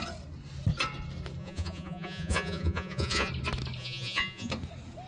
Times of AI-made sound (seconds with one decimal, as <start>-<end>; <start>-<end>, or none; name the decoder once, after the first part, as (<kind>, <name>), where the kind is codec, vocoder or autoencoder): 1.4-3.3 (vocoder, Vocos); 3.8-4.5

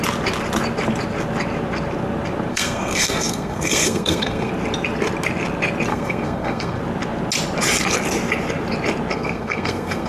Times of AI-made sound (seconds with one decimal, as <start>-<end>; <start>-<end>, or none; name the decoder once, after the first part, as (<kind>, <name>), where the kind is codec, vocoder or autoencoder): 2.5-4.5 (codec, SNAC); 5.9-6.8; 9.1-10.1

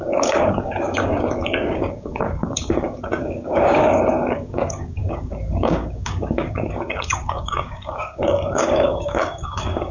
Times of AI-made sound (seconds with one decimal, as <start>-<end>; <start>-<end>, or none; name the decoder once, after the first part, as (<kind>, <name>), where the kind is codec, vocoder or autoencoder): 0.0-9.9 (codec, DAC)

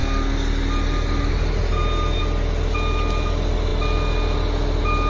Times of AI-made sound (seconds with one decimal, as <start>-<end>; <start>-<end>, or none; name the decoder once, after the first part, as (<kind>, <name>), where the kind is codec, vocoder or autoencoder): none

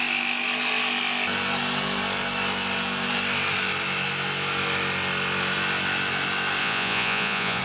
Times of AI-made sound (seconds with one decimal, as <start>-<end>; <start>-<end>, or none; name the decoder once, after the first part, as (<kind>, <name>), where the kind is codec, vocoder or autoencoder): 6.6-7.6 (vocoder, Vocos)

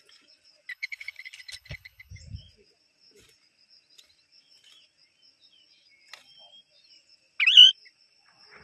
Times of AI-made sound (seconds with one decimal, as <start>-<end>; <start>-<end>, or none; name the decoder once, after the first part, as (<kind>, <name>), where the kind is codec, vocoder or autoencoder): 0.7-2.1 (codec, HILCodec)